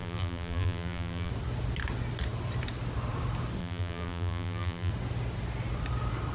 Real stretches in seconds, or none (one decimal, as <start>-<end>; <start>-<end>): 1.3-3.6; 4.9-6.3

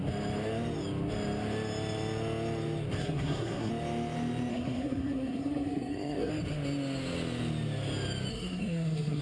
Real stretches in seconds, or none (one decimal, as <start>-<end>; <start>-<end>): 0.0-3.0; 3.7-4.5; 6.3-8.3

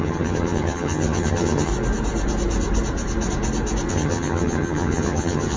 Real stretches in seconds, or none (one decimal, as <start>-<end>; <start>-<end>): 1.7-3.9

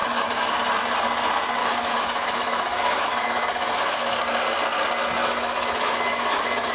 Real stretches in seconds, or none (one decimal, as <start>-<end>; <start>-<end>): 0.5-1.6; 4.2-5.2